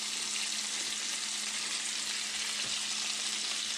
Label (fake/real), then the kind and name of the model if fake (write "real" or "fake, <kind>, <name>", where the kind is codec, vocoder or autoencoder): real